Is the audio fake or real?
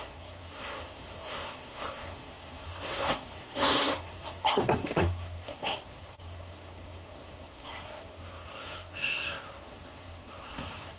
fake